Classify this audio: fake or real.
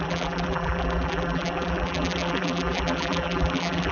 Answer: fake